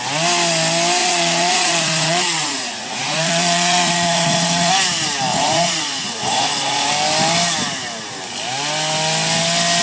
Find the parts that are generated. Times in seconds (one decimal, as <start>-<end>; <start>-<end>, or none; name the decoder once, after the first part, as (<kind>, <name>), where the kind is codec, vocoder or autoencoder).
1.0-4.7 (vocoder, Vocos); 5.3-6.9